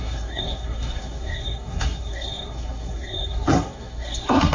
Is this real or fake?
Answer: fake